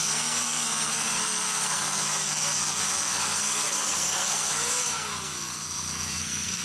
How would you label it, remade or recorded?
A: remade